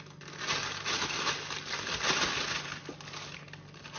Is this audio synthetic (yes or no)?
no